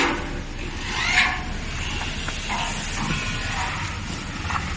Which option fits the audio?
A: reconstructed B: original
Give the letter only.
B